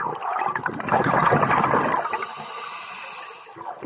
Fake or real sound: real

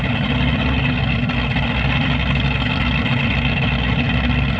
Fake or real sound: real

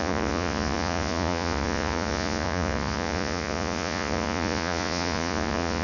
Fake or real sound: fake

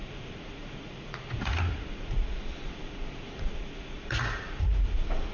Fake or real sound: fake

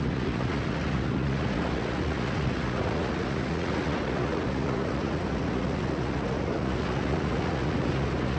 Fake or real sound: fake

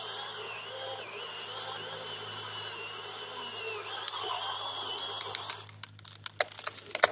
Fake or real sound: real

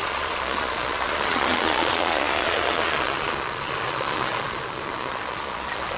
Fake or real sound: fake